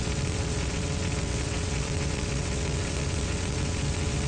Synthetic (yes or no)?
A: yes